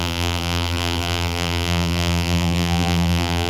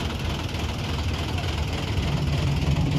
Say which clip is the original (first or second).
second